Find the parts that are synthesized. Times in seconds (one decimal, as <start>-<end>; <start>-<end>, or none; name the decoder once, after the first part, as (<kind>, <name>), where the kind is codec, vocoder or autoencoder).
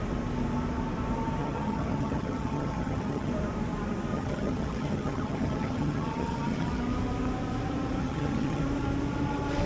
1.4-3.3 (vocoder, HiFi-GAN); 4.1-6.8; 8.0-8.6